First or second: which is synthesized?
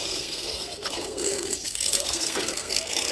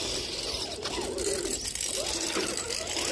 first